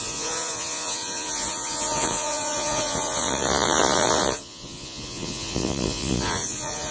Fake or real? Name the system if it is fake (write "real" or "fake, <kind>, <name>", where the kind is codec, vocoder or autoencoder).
fake, vocoder, Vocos